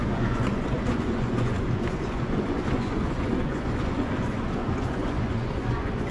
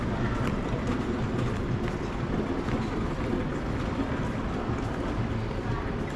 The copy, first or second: first